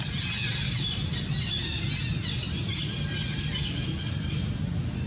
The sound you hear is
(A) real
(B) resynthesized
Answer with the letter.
A